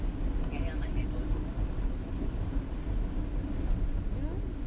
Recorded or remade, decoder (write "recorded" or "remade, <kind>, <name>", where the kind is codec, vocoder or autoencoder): recorded